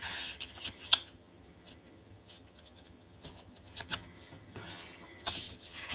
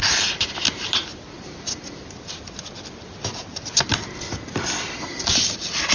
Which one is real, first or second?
second